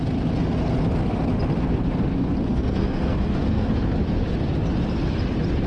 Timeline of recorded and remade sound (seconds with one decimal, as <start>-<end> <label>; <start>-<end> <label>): 0.0-2.5 recorded; 2.5-3.7 remade; 3.7-5.7 recorded